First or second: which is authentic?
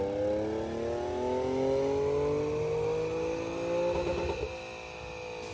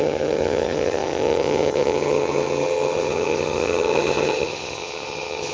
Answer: first